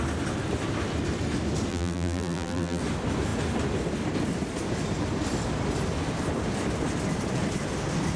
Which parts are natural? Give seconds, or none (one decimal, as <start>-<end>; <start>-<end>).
0.0-1.7; 2.8-8.2